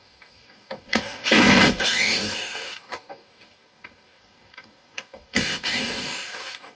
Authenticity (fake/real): fake